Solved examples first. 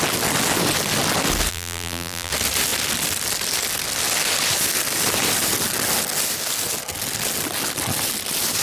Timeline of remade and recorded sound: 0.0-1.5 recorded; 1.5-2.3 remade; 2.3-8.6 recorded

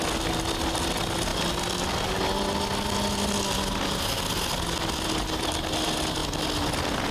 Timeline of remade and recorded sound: 0.0-7.1 recorded

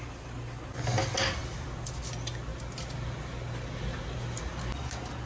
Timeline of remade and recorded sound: 0.0-5.3 recorded

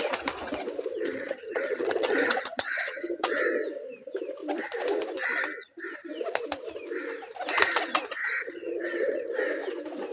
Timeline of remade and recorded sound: 0.0-0.9 recorded; 0.9-3.4 remade; 3.4-8.2 recorded; 8.2-9.3 remade; 9.3-10.1 recorded

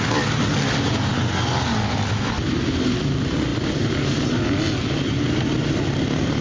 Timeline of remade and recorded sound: 0.0-6.4 recorded